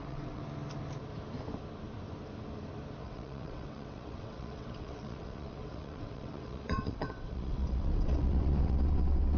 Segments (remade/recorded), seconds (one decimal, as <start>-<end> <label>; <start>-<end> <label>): 0.0-0.4 remade; 0.4-3.0 recorded; 3.0-9.4 remade